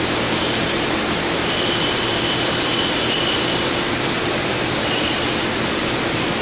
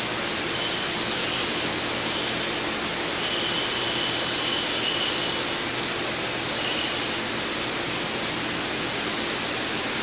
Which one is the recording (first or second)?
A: second